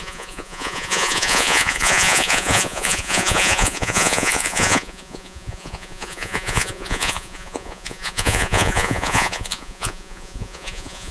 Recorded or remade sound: remade